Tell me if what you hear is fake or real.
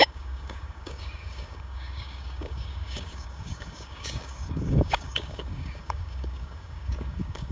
fake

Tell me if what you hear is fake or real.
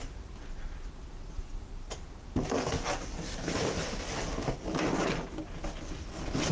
real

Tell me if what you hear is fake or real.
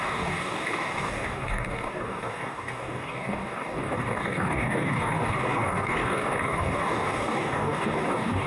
fake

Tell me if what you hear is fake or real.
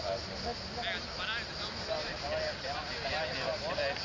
real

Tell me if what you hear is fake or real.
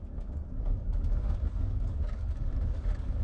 fake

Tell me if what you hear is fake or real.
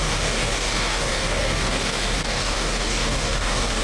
fake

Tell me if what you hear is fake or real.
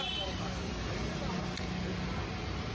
real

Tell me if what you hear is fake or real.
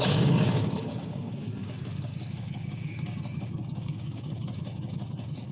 fake